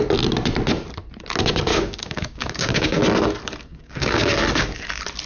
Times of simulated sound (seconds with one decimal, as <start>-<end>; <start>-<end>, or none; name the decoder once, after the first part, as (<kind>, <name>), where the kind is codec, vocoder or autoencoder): 1.7-3.0 (codec, DAC); 3.7-4.3